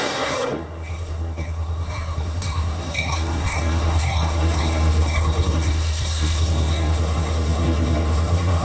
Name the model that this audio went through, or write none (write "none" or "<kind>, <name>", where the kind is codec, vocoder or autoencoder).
codec, SNAC